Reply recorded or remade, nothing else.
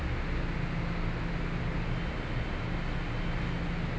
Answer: recorded